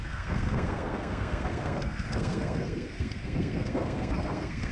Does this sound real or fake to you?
fake